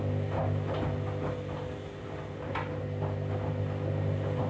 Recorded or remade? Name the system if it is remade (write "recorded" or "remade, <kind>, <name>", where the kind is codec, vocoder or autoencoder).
recorded